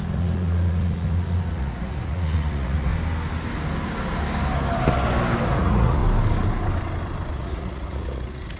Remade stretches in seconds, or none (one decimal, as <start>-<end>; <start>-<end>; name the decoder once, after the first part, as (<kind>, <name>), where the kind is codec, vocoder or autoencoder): 0.0-2.9 (vocoder, Vocos); 5.6-6.0; 7.3-8.6